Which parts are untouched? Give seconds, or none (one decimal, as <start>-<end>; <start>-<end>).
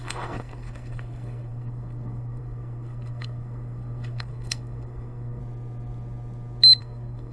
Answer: 5.4-6.8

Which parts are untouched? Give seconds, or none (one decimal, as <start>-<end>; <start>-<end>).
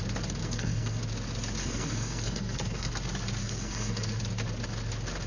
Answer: 0.0-0.4; 1.0-1.6; 2.9-3.4; 4.2-5.3